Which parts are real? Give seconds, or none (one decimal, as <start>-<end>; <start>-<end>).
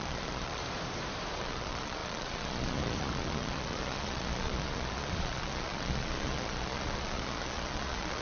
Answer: 0.6-1.4